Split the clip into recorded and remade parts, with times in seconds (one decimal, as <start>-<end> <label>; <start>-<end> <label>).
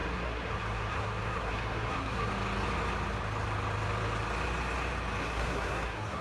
0.0-2.3 remade; 2.3-5.2 recorded; 5.2-6.2 remade